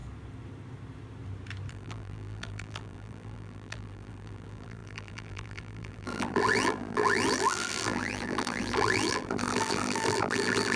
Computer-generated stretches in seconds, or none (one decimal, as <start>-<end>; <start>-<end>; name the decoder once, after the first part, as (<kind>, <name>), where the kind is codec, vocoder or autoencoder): 1.7-10.8 (vocoder, BigVGAN v2)